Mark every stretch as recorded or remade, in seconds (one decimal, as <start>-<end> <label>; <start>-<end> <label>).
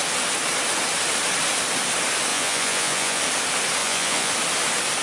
0.0-2.3 recorded; 2.3-3.2 remade; 3.2-3.8 recorded; 3.8-4.3 remade; 4.3-5.0 recorded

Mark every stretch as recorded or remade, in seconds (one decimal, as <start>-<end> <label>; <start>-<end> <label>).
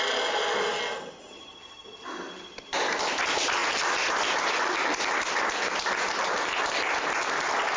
0.0-7.8 recorded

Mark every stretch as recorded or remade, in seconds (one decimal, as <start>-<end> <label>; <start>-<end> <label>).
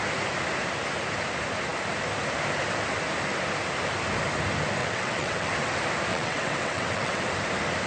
0.0-4.8 recorded; 4.8-5.5 remade; 5.5-6.1 recorded; 6.1-7.2 remade; 7.2-7.9 recorded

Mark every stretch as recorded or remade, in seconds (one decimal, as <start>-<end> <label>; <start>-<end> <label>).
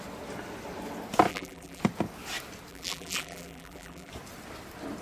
0.0-1.3 recorded; 1.3-1.8 remade; 1.8-2.7 recorded; 2.7-4.1 remade; 4.1-5.0 recorded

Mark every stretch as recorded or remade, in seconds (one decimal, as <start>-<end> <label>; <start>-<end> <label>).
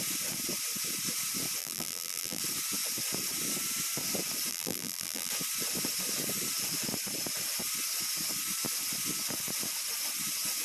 0.0-1.6 recorded; 1.6-2.4 remade; 2.4-4.5 recorded; 4.5-5.3 remade; 5.3-10.6 recorded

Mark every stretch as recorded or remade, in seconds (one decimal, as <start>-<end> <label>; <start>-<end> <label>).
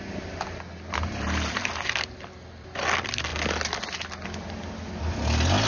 0.0-5.7 recorded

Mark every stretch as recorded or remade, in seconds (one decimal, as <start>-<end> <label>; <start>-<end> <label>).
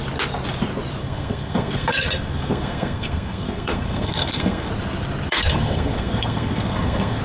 0.0-1.0 recorded; 1.0-4.7 remade; 4.7-5.3 recorded; 5.3-7.2 remade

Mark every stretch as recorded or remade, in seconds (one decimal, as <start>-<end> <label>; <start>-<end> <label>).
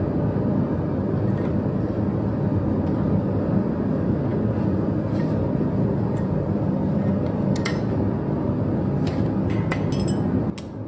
0.0-10.9 recorded